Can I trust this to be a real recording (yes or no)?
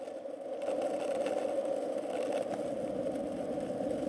yes